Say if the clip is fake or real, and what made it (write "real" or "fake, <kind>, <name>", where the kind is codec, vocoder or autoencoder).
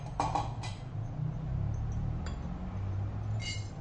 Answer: real